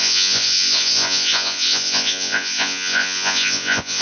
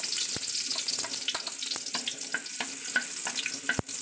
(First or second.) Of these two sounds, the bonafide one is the second